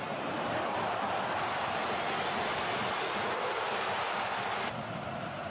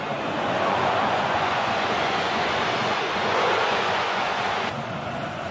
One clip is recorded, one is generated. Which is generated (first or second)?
second